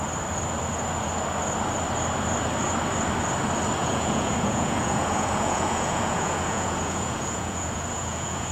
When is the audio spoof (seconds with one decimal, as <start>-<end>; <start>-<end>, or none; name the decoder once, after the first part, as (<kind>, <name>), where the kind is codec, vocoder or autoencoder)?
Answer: 3.8-8.5 (vocoder, Vocos)